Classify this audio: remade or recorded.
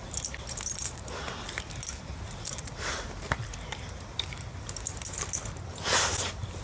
recorded